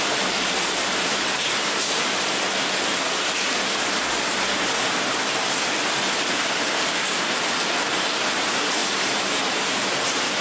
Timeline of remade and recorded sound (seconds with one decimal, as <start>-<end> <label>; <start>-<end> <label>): 0.0-2.1 remade; 2.1-7.1 recorded; 7.1-10.4 remade